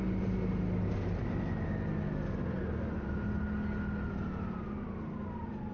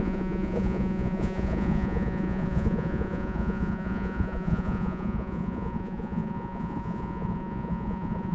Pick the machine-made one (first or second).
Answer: second